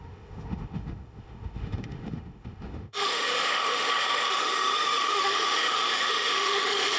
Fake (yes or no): yes